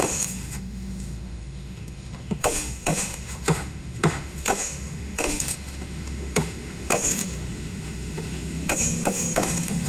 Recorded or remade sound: remade